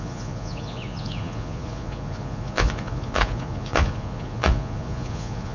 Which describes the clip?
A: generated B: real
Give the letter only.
A